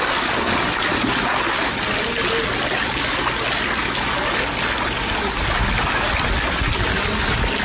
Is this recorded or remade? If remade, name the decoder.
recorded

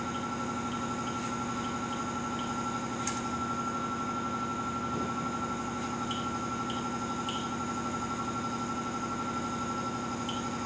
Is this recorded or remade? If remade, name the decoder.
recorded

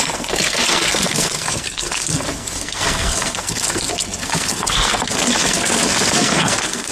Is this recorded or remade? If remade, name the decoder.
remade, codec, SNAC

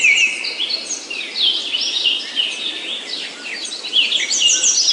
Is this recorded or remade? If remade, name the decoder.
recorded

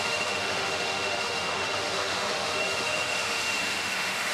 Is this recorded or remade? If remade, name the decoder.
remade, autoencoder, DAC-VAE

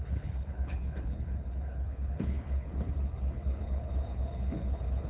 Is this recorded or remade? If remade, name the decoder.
remade, codec, HILCodec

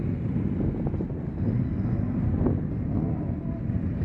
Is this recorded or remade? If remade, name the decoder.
recorded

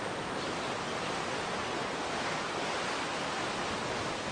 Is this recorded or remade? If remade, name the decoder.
remade, vocoder, BigVGAN v2